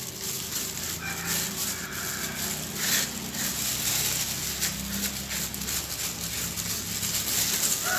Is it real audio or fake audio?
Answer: real